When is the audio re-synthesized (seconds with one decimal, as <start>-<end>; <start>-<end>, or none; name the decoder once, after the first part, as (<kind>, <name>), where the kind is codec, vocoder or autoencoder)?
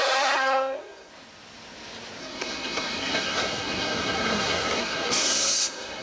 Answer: 0.0-1.1 (codec, SNAC); 2.2-6.0